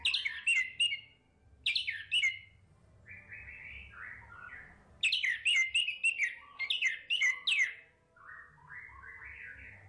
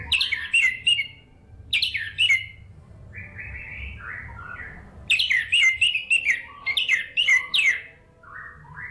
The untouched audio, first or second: first